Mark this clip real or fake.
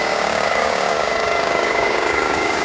fake